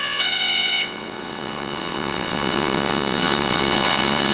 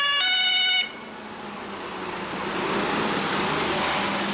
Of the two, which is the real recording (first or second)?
second